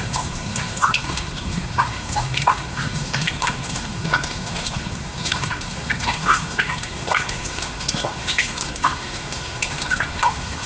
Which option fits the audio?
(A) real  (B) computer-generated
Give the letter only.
B